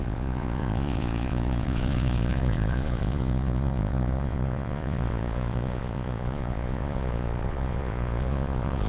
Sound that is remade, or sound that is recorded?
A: remade